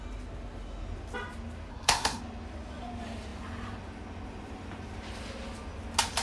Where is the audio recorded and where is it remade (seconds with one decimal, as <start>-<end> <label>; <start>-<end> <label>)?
0.0-1.7 recorded; 1.7-2.2 remade; 2.2-6.2 recorded